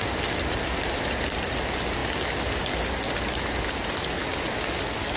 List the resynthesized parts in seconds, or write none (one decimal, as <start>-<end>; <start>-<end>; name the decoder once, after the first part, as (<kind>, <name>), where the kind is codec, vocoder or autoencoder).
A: none